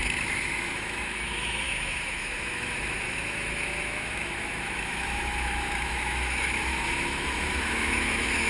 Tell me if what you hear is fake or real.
fake